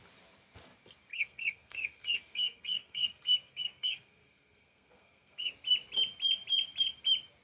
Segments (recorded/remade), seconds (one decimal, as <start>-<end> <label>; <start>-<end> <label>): 0.0-1.1 recorded; 1.1-5.5 remade; 5.5-7.4 recorded